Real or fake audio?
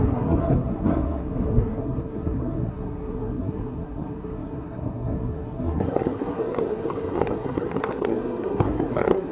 fake